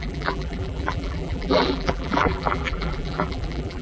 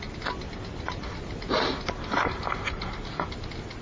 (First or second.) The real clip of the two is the second